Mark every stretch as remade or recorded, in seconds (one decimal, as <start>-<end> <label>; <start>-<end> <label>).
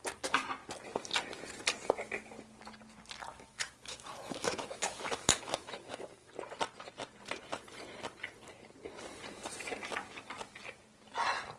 0.0-3.3 recorded; 3.3-6.3 remade; 6.3-11.6 recorded